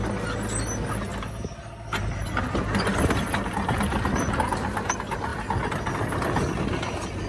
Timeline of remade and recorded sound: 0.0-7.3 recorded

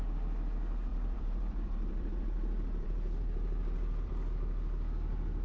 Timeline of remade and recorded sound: 0.0-0.9 recorded; 0.9-4.1 remade; 4.1-5.4 recorded

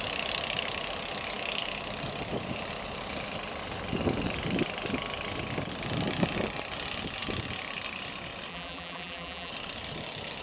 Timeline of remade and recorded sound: 0.0-8.5 recorded; 8.5-9.5 remade; 9.5-10.4 recorded

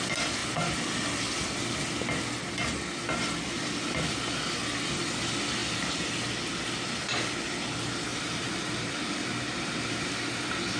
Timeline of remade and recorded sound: 0.0-5.6 recorded; 5.6-6.1 remade; 6.1-8.1 recorded; 8.1-9.9 remade; 9.9-10.8 recorded